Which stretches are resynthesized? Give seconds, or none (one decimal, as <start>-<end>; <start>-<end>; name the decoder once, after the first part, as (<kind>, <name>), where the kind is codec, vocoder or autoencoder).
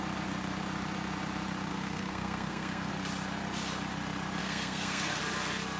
1.7-2.9 (codec, SNAC); 4.4-5.2